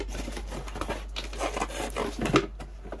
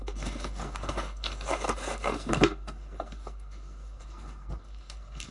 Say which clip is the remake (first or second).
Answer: second